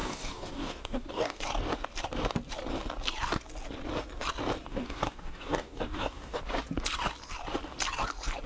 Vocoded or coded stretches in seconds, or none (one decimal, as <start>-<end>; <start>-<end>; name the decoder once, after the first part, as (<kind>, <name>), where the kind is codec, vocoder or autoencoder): 0.0-1.4 (codec, DAC); 4.7-6.4